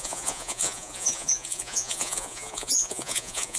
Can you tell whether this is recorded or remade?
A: remade